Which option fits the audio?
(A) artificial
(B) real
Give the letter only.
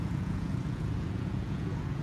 A